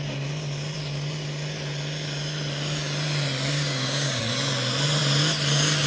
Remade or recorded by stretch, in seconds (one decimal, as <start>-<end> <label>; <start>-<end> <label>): 0.0-3.5 recorded; 3.5-4.2 remade; 4.2-5.9 recorded